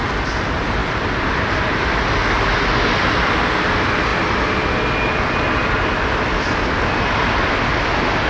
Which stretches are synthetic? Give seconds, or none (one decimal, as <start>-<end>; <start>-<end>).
none